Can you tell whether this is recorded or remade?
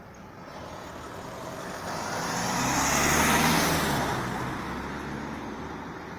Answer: recorded